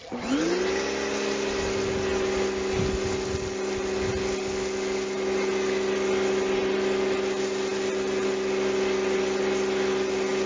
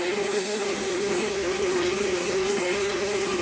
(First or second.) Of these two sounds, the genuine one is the first